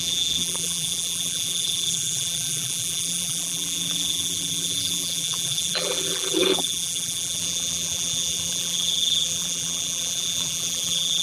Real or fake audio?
fake